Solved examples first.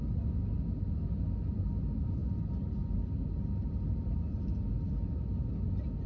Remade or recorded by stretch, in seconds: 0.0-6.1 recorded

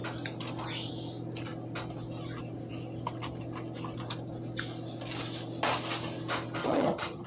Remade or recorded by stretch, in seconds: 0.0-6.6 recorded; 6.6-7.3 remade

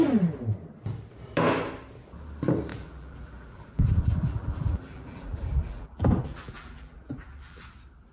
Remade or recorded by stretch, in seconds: 0.0-2.7 recorded; 2.7-7.6 remade; 7.6-8.1 recorded